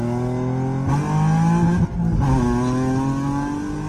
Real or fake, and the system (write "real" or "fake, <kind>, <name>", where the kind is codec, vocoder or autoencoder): real